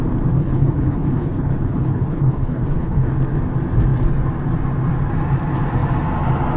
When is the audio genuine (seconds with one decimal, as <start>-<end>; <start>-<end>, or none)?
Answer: 0.0-0.4; 3.1-6.6